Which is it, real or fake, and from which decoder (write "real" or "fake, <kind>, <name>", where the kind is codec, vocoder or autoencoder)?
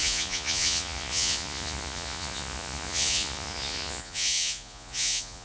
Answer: fake, vocoder, Vocos